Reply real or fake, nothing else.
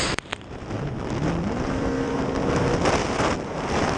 fake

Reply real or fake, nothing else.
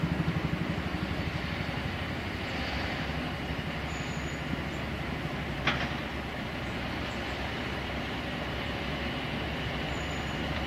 real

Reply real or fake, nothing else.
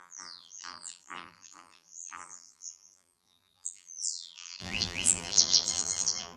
fake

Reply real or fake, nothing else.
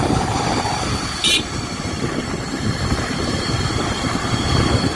fake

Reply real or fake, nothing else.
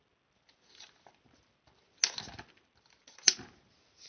real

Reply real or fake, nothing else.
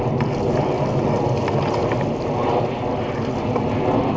real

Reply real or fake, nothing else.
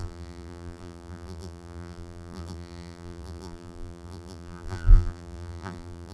fake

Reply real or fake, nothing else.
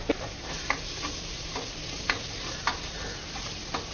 real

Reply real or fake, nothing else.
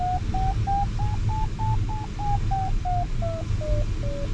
real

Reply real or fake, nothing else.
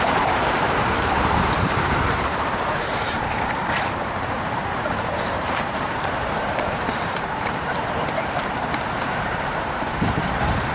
fake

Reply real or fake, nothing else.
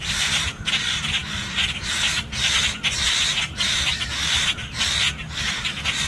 real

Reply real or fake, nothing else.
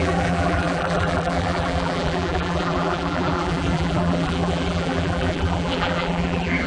fake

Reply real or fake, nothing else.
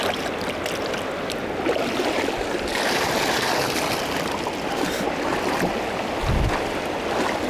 real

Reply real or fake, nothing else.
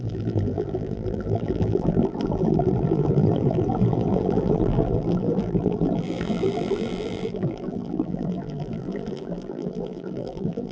fake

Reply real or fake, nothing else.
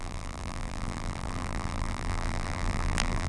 fake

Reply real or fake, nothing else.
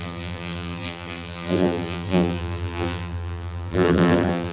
fake